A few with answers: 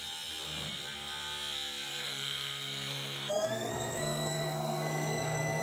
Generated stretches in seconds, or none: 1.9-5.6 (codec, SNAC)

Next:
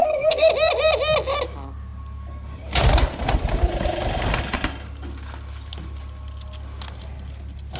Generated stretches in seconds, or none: 0.0-0.5 (codec, SNAC)

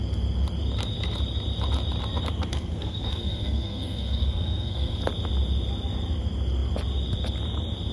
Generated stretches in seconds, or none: 2.5-5.0 (codec, SNAC)

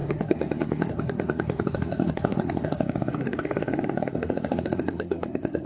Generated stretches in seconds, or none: 0.0-5.7 (codec, SNAC)